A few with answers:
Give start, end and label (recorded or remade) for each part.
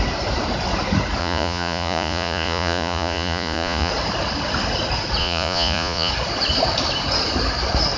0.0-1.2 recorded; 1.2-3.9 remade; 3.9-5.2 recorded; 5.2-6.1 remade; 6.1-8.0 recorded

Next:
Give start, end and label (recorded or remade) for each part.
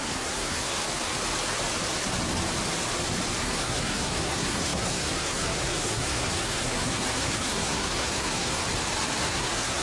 0.0-0.8 remade; 0.8-3.4 recorded; 3.4-8.6 remade; 8.6-9.2 recorded; 9.2-9.8 remade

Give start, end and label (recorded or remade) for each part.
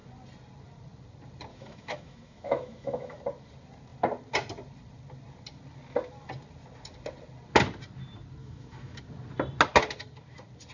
0.0-1.5 recorded; 1.5-3.2 remade; 3.2-8.4 recorded; 8.4-9.0 remade; 9.0-10.7 recorded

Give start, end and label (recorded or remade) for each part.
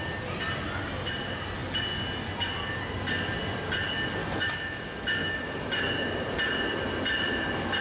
0.0-4.2 recorded; 4.2-5.6 remade; 5.6-7.8 recorded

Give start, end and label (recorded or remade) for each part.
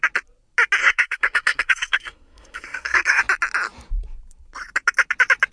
0.0-0.8 recorded; 0.8-3.2 remade; 3.2-5.5 recorded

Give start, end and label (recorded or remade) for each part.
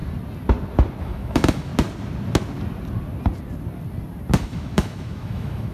0.0-1.0 recorded; 1.0-1.7 remade; 1.7-4.4 recorded; 4.4-5.7 remade